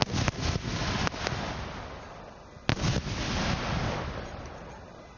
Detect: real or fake real